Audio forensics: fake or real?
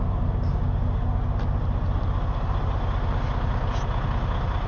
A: real